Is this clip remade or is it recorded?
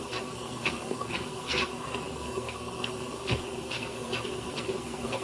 remade